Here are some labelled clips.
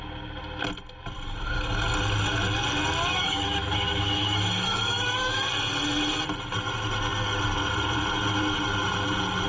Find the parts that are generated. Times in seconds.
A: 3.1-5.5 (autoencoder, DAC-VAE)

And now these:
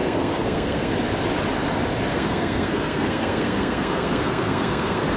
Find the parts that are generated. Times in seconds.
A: 0.0-0.9 (codec, SNAC); 2.1-5.2

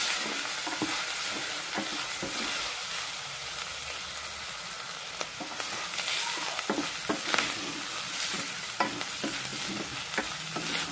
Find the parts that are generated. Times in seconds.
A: none

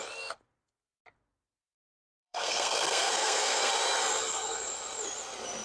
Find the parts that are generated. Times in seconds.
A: 1.6-3.7 (codec, SNAC)

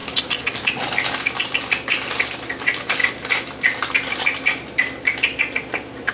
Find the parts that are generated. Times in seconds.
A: none

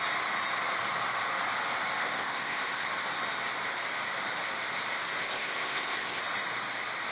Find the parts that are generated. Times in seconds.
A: 2.0-2.9 (codec, ZipCodec); 5.2-6.2

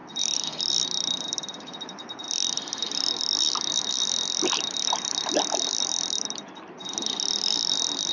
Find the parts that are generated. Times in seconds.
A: 0.0-0.7 (vocoder, BigVGAN v2)

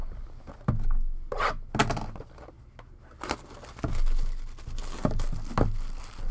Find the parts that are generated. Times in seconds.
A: none